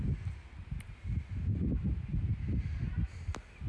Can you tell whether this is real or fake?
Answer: real